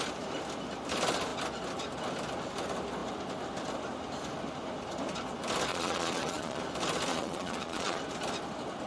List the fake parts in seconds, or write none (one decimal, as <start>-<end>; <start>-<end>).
5.7-6.6; 7.1-8.0